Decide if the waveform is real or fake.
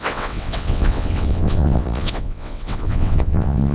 fake